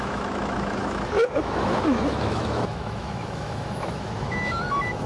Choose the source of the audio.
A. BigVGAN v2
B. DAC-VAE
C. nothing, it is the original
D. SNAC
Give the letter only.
B